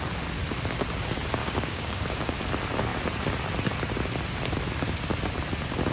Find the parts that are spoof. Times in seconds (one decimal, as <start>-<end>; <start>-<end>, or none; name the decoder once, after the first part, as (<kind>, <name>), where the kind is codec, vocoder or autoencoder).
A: 1.4-2.4 (codec, DAC)